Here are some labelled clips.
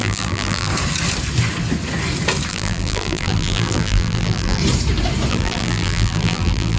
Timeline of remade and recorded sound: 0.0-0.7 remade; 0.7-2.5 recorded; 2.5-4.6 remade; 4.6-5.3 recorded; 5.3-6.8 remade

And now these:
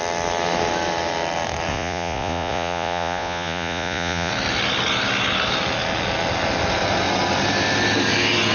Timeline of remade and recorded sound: 0.0-1.7 recorded; 1.7-4.3 remade; 4.3-8.5 recorded

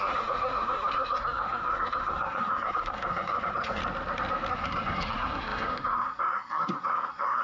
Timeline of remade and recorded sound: 0.0-3.8 remade; 3.8-4.5 recorded; 4.5-7.4 remade

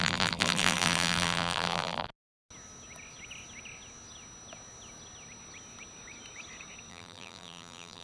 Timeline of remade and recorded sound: 0.0-2.1 remade; 2.1-6.9 recorded; 6.9-8.0 remade

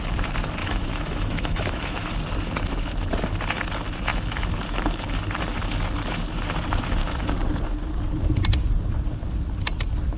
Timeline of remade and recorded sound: 0.0-0.6 recorded; 0.6-2.1 remade; 2.1-10.2 recorded